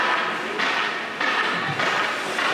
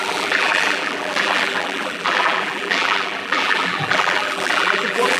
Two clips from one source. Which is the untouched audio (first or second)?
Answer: first